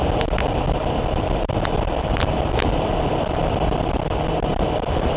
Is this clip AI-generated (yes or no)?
yes